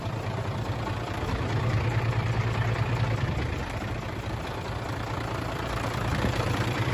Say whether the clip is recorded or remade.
remade